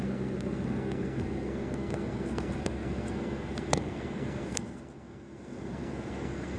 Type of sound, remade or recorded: remade